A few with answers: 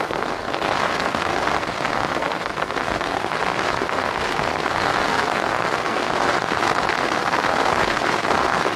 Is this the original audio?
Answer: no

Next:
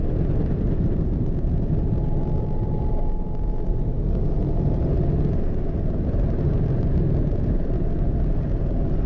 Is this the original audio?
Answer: yes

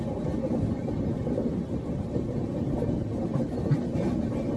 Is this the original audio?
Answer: yes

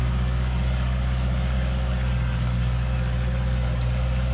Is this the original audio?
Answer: no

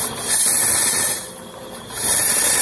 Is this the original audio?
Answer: yes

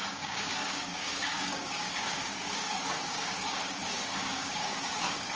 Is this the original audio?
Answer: no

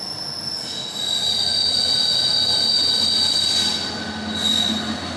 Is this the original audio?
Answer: yes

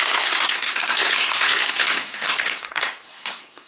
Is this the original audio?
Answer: no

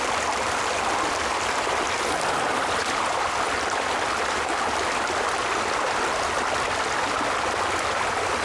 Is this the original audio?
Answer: yes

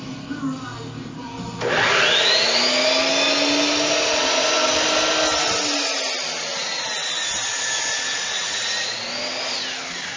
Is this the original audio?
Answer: yes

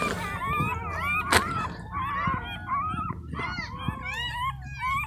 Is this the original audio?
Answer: yes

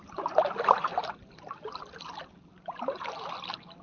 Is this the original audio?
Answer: yes